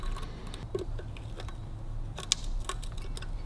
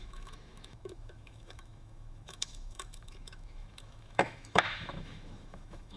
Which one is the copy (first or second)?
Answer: second